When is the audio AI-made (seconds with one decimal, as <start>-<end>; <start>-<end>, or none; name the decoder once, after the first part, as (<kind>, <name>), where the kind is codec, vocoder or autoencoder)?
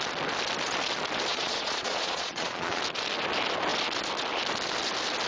1.3-2.8 (vocoder, Vocos)